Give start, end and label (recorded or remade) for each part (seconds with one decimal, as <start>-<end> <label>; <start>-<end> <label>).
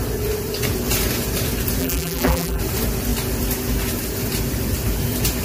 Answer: 0.0-1.8 recorded; 1.8-2.6 remade; 2.6-5.4 recorded